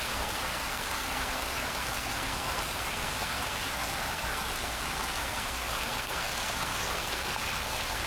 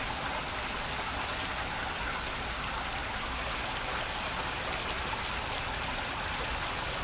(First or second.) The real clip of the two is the second